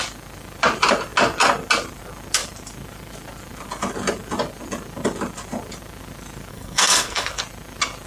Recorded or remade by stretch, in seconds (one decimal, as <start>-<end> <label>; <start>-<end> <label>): 0.0-6.5 recorded; 6.5-7.4 remade; 7.4-8.1 recorded